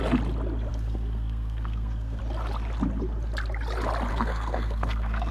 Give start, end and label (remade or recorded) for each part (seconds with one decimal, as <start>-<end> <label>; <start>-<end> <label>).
0.0-0.7 recorded; 0.7-2.2 remade; 2.2-4.1 recorded; 4.1-5.3 remade